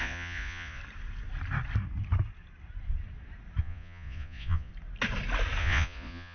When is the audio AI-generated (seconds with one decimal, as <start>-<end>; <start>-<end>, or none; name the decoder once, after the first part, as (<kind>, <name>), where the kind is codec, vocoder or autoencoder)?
0.0-0.8 (vocoder, Vocos); 3.6-4.7; 5.6-6.3